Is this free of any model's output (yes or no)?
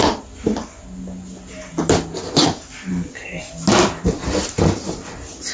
yes